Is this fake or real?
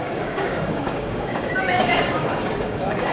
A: fake